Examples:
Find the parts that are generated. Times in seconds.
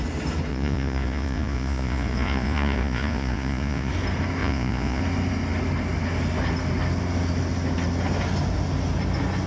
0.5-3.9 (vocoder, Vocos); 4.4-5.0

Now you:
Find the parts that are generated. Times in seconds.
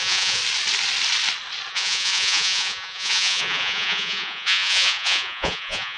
0.0-0.4 (vocoder, Vocos); 1.7-6.0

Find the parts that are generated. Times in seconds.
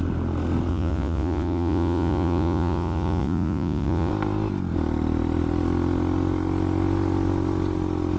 0.7-4.1 (vocoder, Vocos)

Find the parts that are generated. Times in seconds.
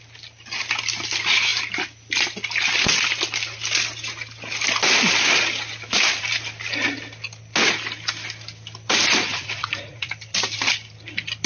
9.3-10.1 (vocoder, Vocos)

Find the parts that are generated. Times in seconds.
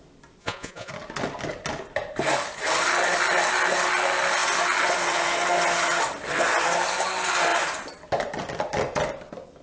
0.4-0.9 (vocoder, Vocos)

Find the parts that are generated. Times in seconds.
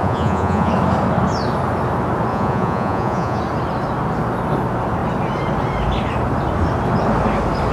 0.0-0.7 (vocoder, Vocos); 2.3-3.4